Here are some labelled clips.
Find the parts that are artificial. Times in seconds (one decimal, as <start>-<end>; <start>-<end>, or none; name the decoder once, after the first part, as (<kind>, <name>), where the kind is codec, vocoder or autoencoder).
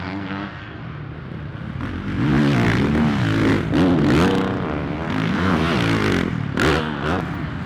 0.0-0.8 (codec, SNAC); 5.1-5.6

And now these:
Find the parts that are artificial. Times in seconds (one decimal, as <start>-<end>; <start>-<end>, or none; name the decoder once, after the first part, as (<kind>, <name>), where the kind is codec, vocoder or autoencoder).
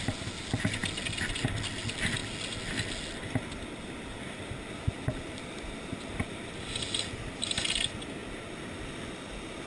none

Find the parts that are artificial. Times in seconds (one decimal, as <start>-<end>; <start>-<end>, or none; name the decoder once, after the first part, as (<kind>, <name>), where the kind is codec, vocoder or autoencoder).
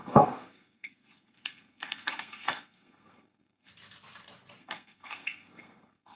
0.0-3.7 (codec, SNAC); 4.6-6.2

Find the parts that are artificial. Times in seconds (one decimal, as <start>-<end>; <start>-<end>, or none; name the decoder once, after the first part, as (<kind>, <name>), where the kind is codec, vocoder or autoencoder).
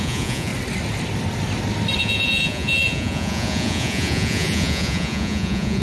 0.0-0.5 (vocoder, Vocos); 2.0-5.8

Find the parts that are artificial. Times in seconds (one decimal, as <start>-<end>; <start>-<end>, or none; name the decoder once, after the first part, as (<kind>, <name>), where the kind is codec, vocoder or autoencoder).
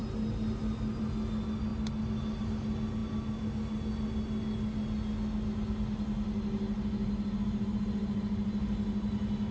none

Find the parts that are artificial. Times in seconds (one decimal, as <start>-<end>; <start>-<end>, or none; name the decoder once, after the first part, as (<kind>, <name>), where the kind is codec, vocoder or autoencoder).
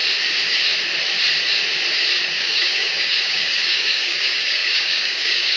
2.4-5.6 (codec, DAC)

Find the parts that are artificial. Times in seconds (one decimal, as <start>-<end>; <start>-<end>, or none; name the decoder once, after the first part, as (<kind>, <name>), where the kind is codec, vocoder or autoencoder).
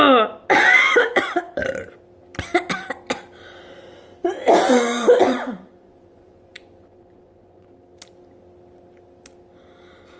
1.0-1.6 (vocoder, Vocos); 5.2-7.7